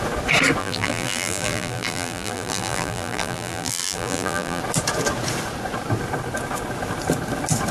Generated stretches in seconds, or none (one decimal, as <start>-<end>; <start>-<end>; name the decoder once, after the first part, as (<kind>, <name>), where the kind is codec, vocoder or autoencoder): 0.6-4.6 (vocoder, BigVGAN v2)